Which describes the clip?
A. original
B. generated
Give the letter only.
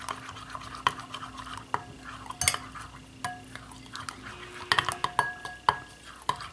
A